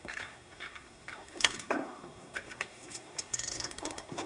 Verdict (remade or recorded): remade